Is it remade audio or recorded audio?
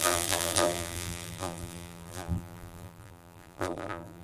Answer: remade